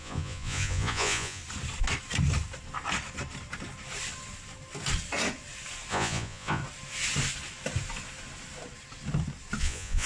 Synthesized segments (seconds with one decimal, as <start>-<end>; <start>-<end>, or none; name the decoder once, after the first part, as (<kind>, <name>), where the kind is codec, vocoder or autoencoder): 0.0-1.4 (vocoder, Vocos); 5.9-6.6; 9.6-10.1

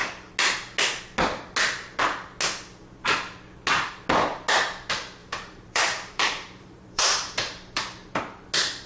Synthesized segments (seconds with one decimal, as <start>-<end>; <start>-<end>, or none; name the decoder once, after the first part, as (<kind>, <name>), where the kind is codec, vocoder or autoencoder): 5.2-8.2 (vocoder, BigVGAN v2)

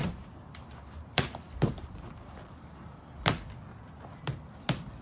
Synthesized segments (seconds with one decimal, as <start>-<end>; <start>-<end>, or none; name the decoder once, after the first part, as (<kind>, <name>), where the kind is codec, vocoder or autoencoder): 0.0-3.0 (vocoder, BigVGAN v2); 3.8-4.6

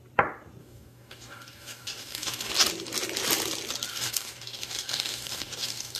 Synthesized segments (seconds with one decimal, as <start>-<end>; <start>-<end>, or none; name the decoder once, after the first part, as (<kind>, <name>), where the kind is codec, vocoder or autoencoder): 0.6-2.5 (codec, DAC); 3.9-6.0

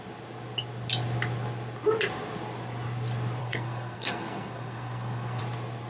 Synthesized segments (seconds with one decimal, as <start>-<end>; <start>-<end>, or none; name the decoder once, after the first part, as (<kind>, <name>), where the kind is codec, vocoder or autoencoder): 3.4-5.4 (codec, SNAC)